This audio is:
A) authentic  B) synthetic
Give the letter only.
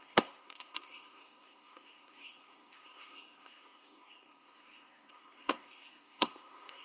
B